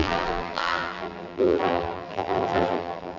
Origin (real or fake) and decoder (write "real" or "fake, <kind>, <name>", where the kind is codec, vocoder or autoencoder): fake, vocoder, BigVGAN v2